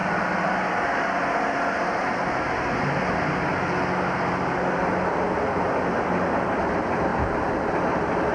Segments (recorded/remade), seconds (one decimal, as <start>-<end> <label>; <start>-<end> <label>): 0.0-2.3 remade; 2.3-8.3 recorded

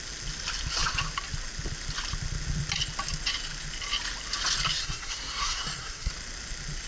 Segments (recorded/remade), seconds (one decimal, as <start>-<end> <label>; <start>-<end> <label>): 0.0-4.8 recorded; 4.8-6.1 remade; 6.1-6.9 recorded

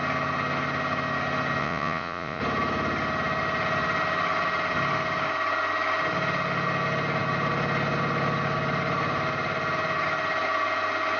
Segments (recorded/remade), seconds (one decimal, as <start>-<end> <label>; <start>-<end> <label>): 0.0-1.6 recorded; 1.6-2.4 remade; 2.4-11.2 recorded

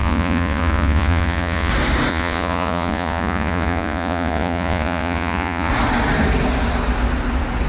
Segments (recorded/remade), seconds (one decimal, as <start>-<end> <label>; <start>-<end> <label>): 0.0-1.7 remade; 1.7-2.1 recorded; 2.1-5.7 remade; 5.7-7.7 recorded